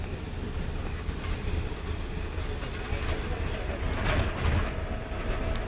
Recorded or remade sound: recorded